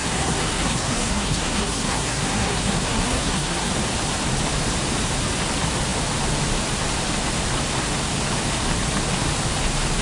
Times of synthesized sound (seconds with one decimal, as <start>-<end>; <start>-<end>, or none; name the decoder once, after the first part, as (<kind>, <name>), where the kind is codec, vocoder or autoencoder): 0.0-3.7 (codec, SNAC)